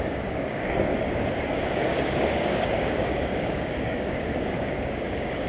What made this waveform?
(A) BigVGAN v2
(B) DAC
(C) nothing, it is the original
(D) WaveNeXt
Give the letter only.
B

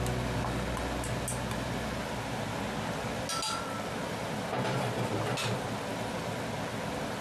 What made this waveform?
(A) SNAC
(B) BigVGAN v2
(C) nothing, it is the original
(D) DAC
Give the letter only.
C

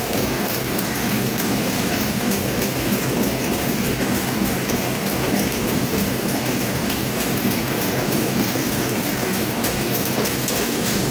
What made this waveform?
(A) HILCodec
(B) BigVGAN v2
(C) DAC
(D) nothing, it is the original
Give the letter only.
C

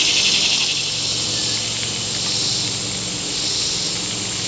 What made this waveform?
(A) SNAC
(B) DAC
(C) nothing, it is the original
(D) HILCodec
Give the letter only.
C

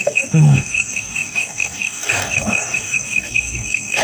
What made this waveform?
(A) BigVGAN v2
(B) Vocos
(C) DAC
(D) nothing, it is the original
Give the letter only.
C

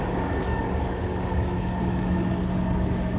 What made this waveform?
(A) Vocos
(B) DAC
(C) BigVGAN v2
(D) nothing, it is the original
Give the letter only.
B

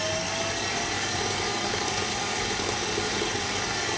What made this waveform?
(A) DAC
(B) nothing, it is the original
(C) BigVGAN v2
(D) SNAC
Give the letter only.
A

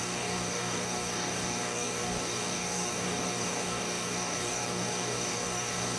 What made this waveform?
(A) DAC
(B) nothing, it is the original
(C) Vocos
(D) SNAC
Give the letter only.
A